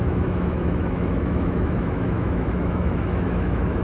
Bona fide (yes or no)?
no